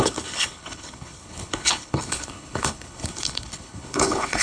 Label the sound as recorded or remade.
remade